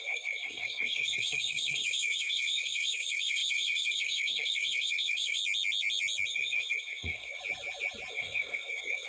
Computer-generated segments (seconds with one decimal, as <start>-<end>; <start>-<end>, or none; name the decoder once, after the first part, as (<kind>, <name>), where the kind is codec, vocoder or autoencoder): 0.0-5.4 (codec, SNAC); 6.3-7.4; 8.1-9.1

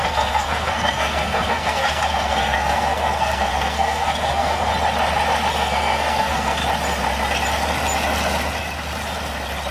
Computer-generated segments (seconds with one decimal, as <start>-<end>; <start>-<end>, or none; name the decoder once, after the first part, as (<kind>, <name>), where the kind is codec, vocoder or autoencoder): 0.0-4.7 (codec, SNAC); 5.5-6.6

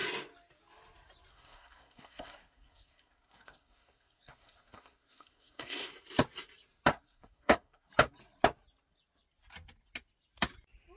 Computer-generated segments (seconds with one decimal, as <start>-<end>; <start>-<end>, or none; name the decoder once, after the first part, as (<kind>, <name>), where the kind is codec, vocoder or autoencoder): 1.3-5.9 (codec, SNAC); 6.9-7.9

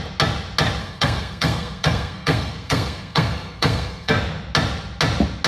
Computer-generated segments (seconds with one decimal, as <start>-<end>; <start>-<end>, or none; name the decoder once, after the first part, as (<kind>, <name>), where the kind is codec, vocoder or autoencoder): 0.8-4.1 (codec, SNAC)